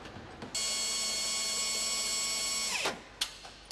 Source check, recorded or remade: recorded